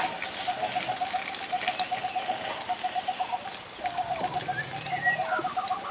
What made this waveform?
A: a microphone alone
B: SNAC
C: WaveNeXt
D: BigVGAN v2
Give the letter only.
A